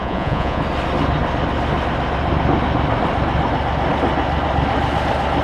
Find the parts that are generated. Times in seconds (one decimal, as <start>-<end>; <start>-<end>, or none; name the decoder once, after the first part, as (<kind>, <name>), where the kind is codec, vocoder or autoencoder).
0.0-0.6 (vocoder, Vocos)